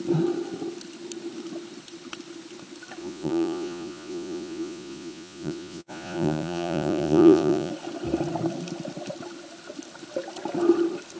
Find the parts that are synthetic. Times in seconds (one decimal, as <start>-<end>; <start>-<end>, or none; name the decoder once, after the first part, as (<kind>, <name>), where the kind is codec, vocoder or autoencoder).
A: 3.0-7.7 (vocoder, Vocos)

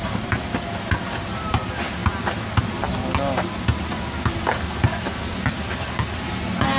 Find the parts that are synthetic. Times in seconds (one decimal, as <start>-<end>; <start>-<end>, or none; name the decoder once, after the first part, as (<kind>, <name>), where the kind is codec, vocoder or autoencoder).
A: none